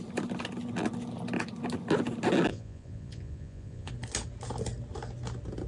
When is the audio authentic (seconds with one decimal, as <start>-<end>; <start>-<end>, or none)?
0.0-2.5; 3.9-5.7